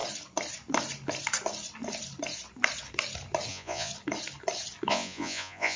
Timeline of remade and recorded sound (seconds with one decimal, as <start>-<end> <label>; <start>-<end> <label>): 0.0-3.5 recorded; 3.5-3.9 remade; 3.9-4.9 recorded; 4.9-5.8 remade